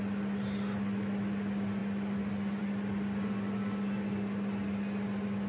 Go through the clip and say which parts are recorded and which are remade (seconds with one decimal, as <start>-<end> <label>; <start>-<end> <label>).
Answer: 0.0-5.5 recorded